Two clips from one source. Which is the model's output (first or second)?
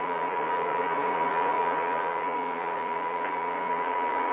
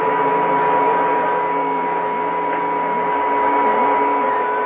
first